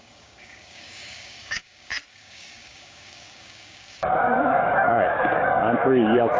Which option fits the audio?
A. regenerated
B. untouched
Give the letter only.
A